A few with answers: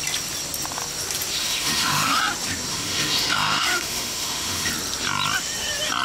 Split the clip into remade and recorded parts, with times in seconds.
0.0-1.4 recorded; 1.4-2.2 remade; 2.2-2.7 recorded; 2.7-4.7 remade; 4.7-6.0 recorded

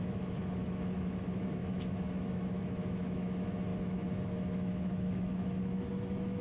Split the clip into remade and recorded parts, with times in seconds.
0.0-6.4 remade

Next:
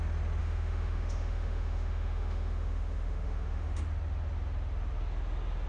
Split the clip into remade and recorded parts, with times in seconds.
0.0-0.4 recorded; 0.4-3.8 remade; 3.8-5.7 recorded

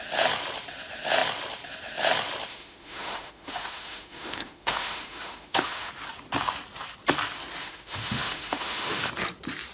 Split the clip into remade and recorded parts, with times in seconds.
0.0-2.5 recorded; 2.5-5.9 remade; 5.9-7.6 recorded; 7.6-9.1 remade; 9.1-9.7 recorded

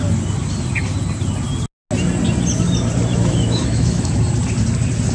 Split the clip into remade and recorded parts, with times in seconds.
0.0-3.1 recorded; 3.1-4.2 remade; 4.2-5.1 recorded

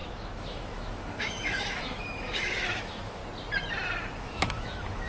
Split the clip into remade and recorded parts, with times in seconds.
0.0-3.2 remade; 3.2-4.2 recorded; 4.2-5.1 remade

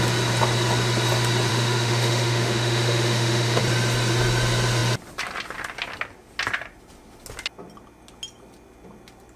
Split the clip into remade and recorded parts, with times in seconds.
0.0-1.5 recorded; 1.5-3.6 remade; 3.6-9.4 recorded